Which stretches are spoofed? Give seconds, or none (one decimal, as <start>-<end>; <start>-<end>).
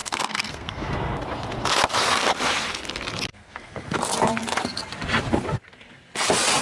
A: 0.0-0.9; 3.3-4.0